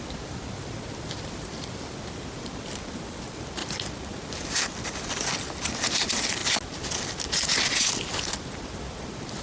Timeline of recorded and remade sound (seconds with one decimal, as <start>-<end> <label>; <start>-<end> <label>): 0.0-3.6 remade; 3.6-5.2 recorded; 5.2-6.4 remade; 6.4-8.3 recorded; 8.3-9.4 remade